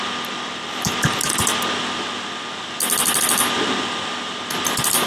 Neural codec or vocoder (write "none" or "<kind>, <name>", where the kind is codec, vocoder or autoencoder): none